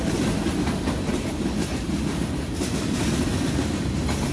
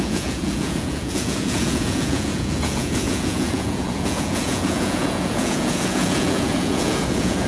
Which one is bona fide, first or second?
first